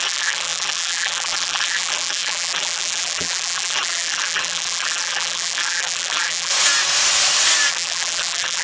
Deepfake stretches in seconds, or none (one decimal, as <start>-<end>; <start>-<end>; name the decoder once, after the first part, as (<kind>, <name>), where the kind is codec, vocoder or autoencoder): 0.0-6.5 (vocoder, BigVGAN v2); 7.7-8.6